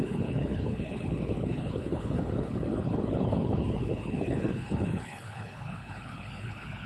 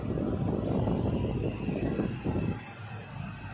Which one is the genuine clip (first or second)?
second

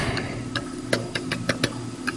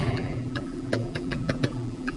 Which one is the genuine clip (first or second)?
first